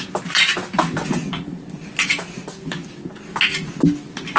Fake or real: real